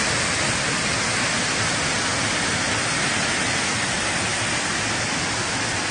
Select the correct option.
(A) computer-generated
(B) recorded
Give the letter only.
B